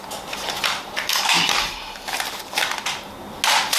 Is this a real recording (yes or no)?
yes